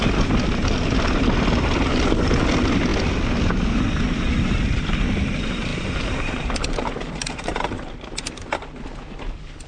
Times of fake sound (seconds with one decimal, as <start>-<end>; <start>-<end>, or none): 5.7-7.9